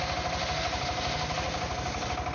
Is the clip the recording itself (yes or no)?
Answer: yes